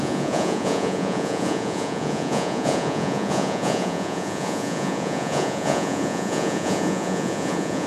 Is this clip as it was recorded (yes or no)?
no